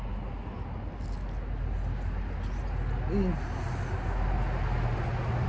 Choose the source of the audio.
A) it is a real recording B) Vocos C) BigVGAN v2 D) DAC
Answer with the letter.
A